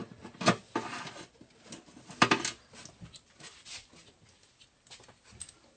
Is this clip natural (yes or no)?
yes